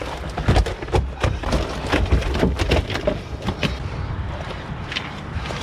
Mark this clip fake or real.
real